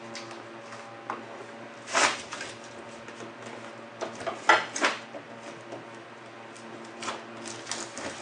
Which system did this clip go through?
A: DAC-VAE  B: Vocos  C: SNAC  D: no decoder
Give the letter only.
D